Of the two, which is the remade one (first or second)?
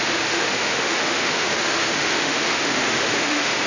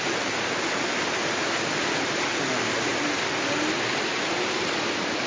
first